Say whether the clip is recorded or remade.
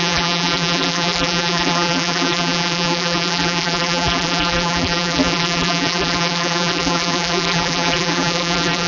remade